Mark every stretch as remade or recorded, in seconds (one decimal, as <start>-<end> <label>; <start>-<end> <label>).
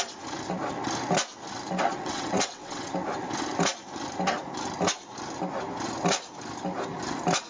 0.0-1.9 recorded; 1.9-2.9 remade; 2.9-7.5 recorded